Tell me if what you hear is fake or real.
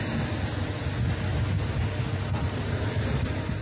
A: real